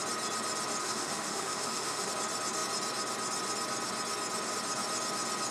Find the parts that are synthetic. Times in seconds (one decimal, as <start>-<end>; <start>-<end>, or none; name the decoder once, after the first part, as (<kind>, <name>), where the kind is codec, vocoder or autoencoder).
0.8-2.1 (autoencoder, DAC-VAE)